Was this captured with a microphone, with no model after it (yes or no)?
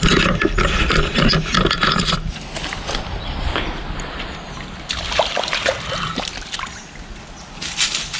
yes